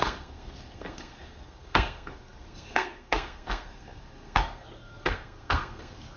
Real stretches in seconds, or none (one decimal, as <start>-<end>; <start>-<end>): none